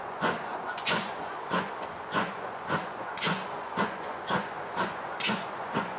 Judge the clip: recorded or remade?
remade